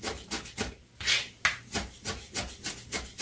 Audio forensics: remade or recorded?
recorded